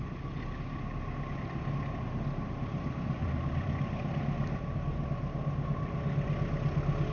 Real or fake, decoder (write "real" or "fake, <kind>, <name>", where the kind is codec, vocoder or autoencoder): real